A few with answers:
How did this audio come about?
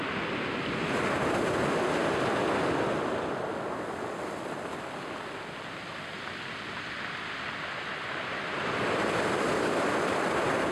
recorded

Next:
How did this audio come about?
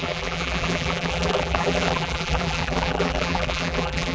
remade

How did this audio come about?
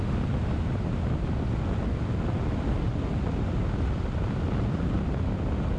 recorded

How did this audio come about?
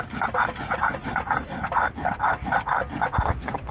recorded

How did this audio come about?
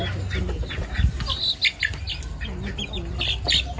recorded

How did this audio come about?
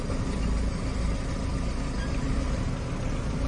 recorded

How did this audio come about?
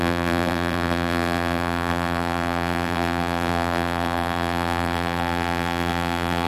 remade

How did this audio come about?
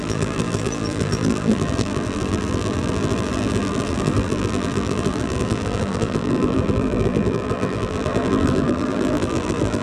remade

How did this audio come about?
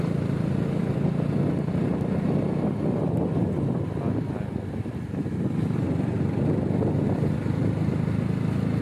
recorded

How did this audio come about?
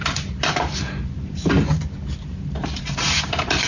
remade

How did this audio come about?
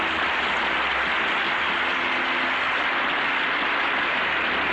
recorded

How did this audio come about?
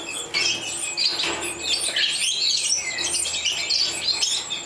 recorded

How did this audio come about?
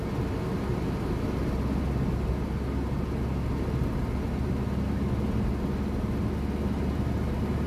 recorded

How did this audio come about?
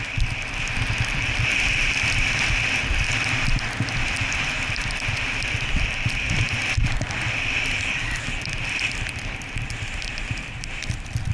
remade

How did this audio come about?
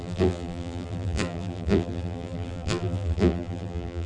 remade